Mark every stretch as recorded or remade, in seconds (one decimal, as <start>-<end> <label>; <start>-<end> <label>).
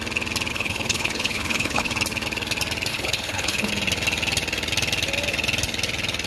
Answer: 0.0-0.5 recorded; 0.5-1.9 remade; 1.9-2.9 recorded; 2.9-3.7 remade; 3.7-6.3 recorded